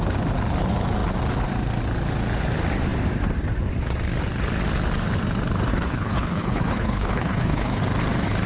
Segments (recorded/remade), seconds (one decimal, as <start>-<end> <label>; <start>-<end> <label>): 0.0-5.7 recorded; 5.7-7.8 remade; 7.8-8.5 recorded